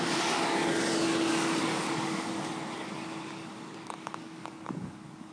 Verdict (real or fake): fake